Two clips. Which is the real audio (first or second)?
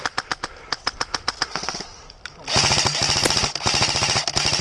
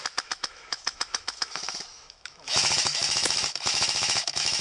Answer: first